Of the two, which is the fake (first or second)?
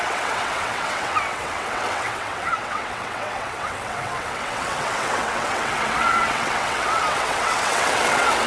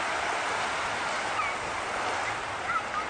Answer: first